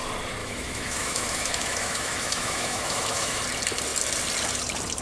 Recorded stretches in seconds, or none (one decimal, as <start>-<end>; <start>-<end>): 0.0-0.4; 3.4-5.0